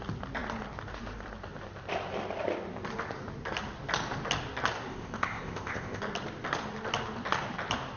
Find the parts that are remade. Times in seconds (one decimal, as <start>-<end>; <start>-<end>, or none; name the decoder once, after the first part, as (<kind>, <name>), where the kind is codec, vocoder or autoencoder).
4.9-6.0 (codec, ZipCodec)